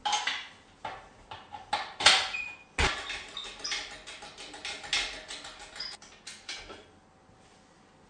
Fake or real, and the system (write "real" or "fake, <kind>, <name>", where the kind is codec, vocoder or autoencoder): real